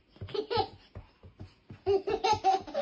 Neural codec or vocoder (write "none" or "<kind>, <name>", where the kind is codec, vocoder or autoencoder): none